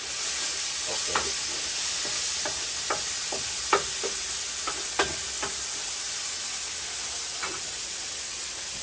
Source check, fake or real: real